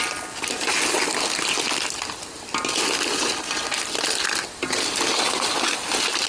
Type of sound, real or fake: real